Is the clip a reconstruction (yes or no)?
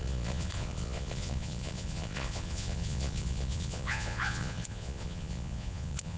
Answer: yes